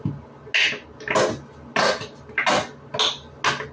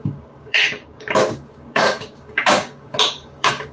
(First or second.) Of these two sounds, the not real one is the second